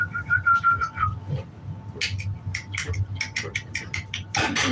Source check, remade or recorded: recorded